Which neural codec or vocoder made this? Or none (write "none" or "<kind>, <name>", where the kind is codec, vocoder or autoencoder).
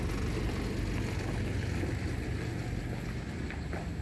none